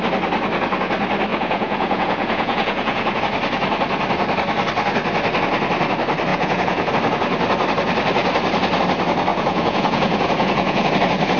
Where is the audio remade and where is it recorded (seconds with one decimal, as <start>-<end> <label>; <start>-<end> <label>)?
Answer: 0.0-1.3 recorded; 1.3-3.2 remade; 3.2-6.3 recorded; 6.3-6.9 remade; 6.9-9.3 recorded; 9.3-10.9 remade; 10.9-11.4 recorded